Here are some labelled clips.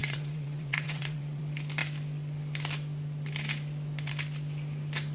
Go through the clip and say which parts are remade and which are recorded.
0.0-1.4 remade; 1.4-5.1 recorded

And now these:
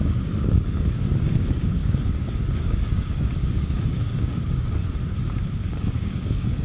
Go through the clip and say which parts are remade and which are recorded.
0.0-1.8 remade; 1.8-2.5 recorded; 2.5-4.8 remade; 4.8-5.7 recorded; 5.7-6.6 remade